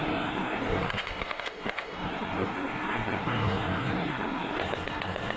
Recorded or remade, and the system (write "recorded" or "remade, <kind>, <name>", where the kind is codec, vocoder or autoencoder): remade, codec, SNAC